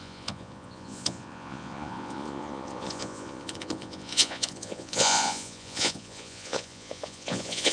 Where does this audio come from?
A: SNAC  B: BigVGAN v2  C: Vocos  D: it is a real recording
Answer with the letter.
C